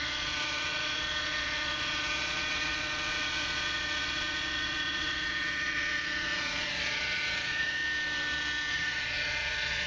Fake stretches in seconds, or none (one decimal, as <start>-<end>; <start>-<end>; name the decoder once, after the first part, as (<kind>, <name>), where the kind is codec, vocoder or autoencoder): 0.0-7.8 (vocoder, Vocos); 8.7-9.9